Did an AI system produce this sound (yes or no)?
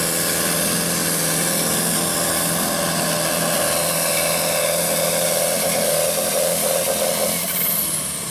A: no